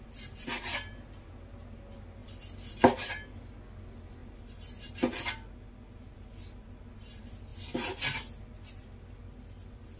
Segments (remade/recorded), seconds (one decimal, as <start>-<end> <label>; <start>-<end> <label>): 0.0-10.0 recorded